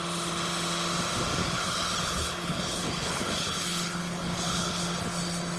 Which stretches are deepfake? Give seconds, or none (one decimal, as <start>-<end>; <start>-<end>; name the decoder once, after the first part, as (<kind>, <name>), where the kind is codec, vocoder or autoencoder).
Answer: 1.4-4.8 (codec, HILCodec)